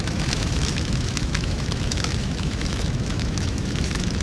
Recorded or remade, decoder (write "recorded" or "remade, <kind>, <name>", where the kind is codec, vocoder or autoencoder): remade, autoencoder, DAC-VAE